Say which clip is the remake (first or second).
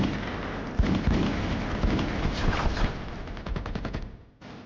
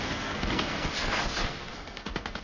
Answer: second